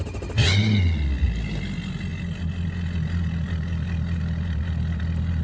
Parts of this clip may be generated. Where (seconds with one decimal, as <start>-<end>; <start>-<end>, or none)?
none